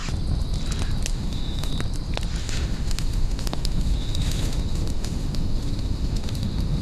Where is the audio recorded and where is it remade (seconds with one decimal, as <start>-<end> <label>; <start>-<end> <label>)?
0.0-1.1 recorded; 1.1-1.7 remade; 1.7-2.4 recorded; 2.4-6.8 remade